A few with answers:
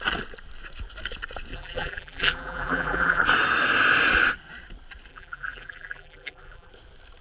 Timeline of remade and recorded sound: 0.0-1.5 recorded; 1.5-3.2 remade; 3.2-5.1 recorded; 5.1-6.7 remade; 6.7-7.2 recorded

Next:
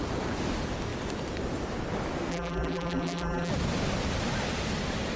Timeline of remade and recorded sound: 0.0-2.3 recorded; 2.3-3.5 remade; 3.5-5.2 recorded

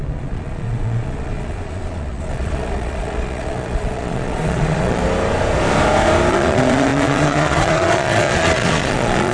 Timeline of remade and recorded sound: 0.0-5.0 remade; 5.0-6.3 recorded; 6.3-9.3 remade

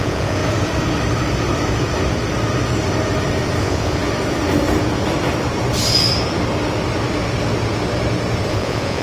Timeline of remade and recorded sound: 0.0-0.4 remade; 0.4-3.6 recorded; 3.6-4.0 remade; 4.0-8.5 recorded; 8.5-9.0 remade